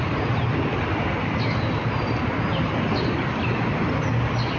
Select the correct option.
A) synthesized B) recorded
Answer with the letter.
B